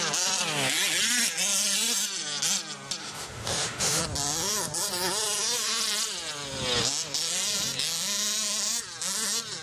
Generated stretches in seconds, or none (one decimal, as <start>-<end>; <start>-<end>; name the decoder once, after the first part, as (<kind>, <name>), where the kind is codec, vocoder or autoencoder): 3.0-4.0 (autoencoder, DAC-VAE)